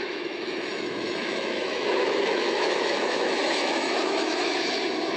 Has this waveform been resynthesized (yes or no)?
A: yes